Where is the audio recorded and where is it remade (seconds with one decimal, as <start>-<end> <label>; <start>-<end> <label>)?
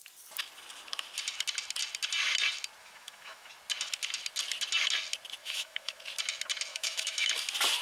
0.0-2.8 recorded; 2.8-3.5 remade; 3.5-5.4 recorded; 5.4-6.0 remade; 6.0-6.7 recorded; 6.7-7.3 remade; 7.3-7.8 recorded